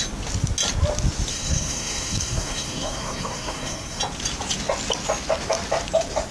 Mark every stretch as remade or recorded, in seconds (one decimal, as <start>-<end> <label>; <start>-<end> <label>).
0.0-1.3 recorded; 1.3-4.0 remade; 4.0-6.3 recorded